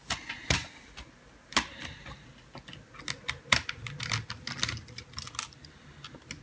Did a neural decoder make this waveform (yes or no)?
no